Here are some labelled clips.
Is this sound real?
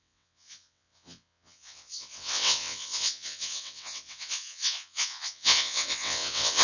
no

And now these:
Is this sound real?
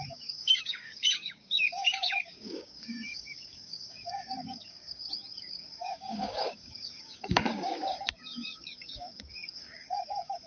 no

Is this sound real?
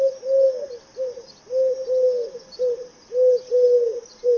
yes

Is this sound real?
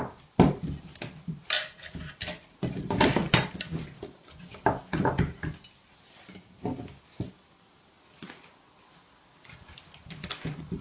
yes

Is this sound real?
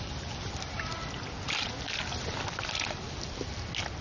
yes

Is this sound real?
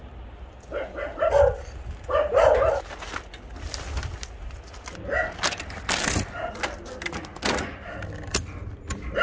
yes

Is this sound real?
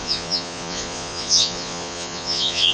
no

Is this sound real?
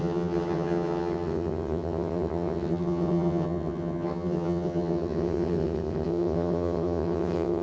no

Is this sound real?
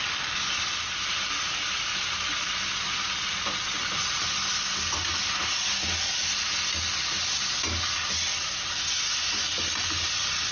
yes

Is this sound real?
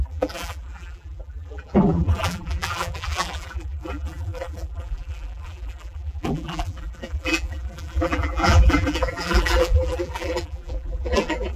no